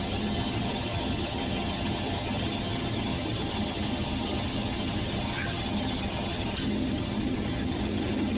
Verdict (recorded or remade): remade